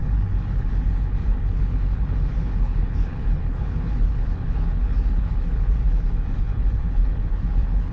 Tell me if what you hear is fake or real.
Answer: fake